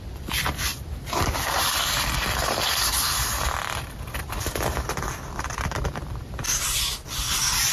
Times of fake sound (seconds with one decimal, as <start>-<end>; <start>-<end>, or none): 0.0-7.7